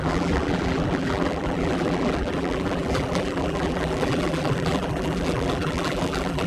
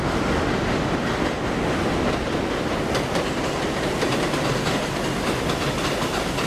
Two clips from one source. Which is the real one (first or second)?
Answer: second